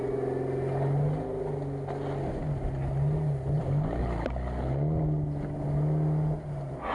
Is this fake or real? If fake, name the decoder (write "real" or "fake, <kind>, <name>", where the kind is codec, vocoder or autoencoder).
real